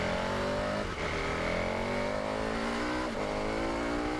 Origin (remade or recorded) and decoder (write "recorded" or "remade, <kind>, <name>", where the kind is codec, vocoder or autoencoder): recorded